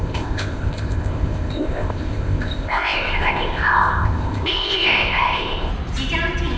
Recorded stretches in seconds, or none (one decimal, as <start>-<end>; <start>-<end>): 5.7-6.6